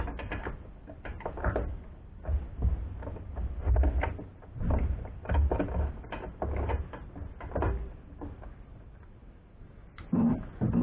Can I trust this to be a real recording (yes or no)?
yes